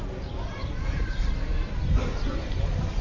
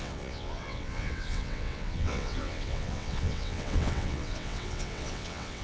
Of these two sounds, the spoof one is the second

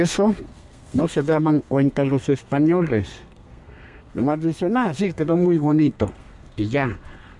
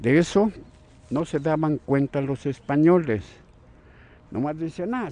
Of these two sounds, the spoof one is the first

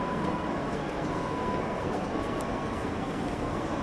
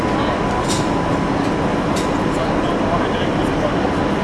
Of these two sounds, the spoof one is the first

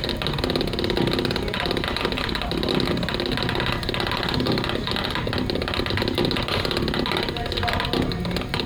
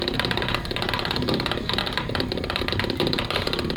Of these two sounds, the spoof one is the second